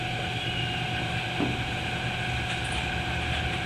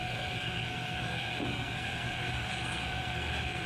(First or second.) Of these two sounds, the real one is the first